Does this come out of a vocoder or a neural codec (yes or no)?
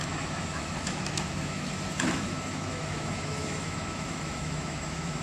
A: yes